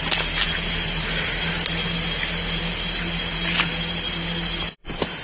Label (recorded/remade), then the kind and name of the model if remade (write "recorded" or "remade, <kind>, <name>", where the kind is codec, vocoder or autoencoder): recorded